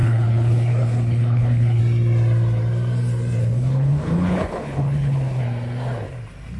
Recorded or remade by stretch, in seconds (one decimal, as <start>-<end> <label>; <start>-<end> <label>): 0.0-1.8 remade; 1.8-3.4 recorded; 3.4-5.4 remade; 5.4-6.6 recorded